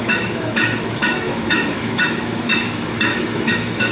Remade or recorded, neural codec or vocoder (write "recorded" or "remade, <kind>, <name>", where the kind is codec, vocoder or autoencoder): remade, autoencoder, DAC-VAE